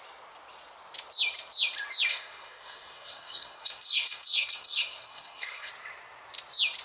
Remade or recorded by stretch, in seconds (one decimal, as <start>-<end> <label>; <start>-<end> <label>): 0.0-2.1 recorded; 2.1-5.7 remade; 5.7-6.8 recorded